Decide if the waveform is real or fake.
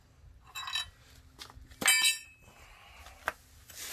real